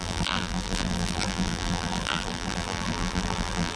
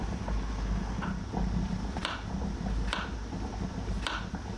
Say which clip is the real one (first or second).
second